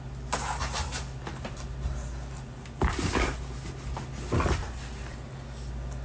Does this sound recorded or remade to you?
recorded